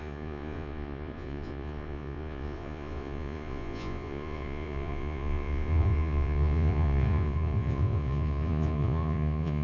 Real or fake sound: fake